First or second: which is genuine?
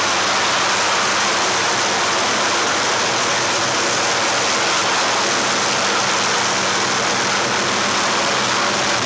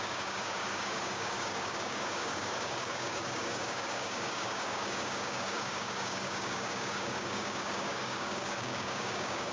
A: first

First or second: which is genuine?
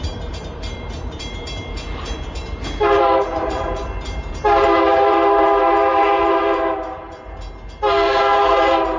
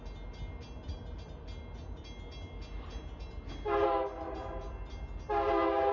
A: second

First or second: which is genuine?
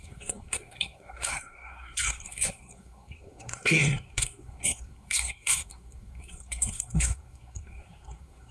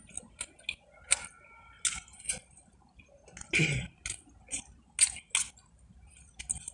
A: second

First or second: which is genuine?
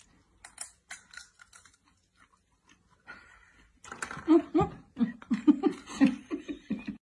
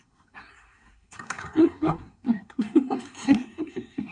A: first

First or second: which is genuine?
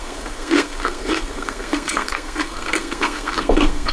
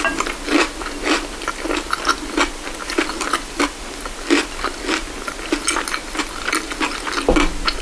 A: second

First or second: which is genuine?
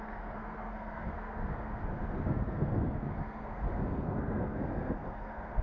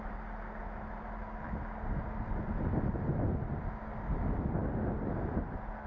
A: second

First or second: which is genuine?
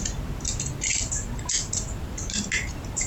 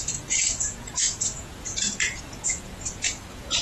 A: first